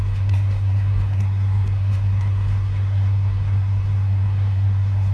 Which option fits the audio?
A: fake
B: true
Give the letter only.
A